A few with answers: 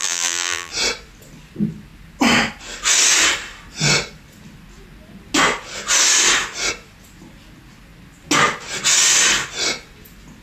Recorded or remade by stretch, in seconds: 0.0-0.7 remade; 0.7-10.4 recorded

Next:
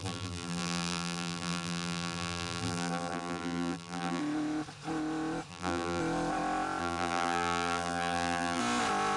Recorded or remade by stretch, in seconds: 0.0-4.2 remade; 4.2-5.5 recorded; 5.5-6.0 remade; 6.0-6.8 recorded; 6.8-8.6 remade; 8.6-9.2 recorded

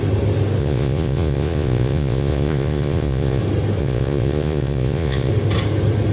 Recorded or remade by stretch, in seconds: 0.0-0.6 recorded; 0.6-3.4 remade; 3.4-3.8 recorded; 3.8-5.3 remade; 5.3-6.1 recorded

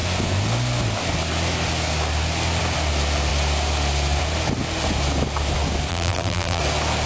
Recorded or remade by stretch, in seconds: 0.0-5.9 recorded; 5.9-6.6 remade; 6.6-7.1 recorded

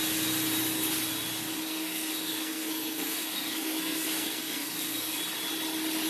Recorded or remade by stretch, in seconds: 0.0-1.6 recorded; 1.6-5.2 remade; 5.2-6.1 recorded

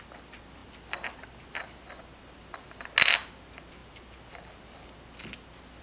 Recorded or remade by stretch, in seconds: 0.0-5.8 recorded

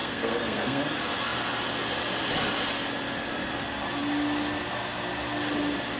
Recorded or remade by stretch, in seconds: 0.0-0.8 remade; 0.8-6.0 recorded